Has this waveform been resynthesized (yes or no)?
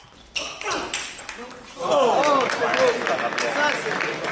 no